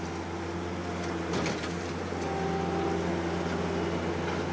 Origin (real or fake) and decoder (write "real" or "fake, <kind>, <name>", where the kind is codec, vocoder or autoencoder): real